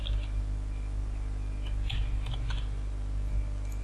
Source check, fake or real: real